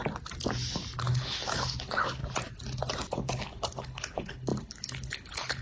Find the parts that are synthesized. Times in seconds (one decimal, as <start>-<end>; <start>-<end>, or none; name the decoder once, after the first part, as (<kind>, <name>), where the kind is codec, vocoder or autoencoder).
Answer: 1.1-2.2 (codec, HILCodec); 3.1-5.6

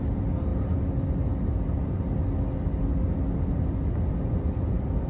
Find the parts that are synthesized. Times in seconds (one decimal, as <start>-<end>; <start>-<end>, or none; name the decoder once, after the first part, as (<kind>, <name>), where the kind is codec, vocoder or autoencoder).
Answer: none

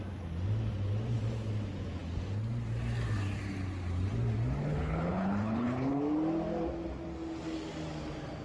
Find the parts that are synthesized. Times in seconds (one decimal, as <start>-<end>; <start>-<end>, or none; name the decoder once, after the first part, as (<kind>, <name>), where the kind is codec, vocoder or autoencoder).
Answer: 4.6-6.0 (codec, HILCodec)

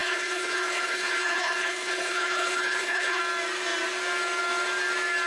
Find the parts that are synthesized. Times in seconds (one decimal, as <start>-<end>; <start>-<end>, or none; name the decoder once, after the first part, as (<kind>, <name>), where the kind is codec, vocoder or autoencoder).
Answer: 0.0-3.2 (codec, HILCodec)

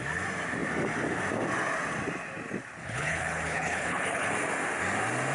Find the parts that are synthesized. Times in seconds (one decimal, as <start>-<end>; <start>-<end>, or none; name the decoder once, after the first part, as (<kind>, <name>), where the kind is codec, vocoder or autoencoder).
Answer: 2.8-4.3 (codec, HILCodec)

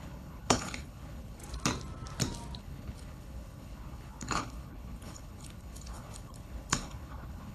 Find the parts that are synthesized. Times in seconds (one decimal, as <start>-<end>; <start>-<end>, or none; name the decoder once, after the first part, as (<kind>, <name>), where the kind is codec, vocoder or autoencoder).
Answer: 0.0-1.4 (codec, HILCodec); 2.6-7.5

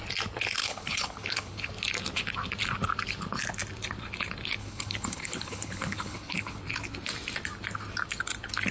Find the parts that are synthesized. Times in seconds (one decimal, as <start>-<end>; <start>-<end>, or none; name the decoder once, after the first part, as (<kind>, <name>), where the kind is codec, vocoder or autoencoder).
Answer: 0.6-1.7 (codec, HILCodec); 4.6-6.6

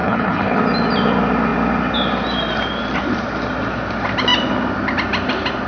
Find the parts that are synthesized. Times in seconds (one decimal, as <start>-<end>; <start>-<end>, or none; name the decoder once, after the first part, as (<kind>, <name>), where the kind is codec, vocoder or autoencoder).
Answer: 0.0-0.6 (codec, HILCodec)